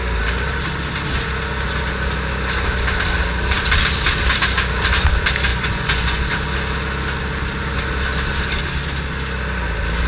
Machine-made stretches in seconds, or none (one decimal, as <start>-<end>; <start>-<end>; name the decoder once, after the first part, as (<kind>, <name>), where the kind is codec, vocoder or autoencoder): 5.5-6.2 (vocoder, Vocos)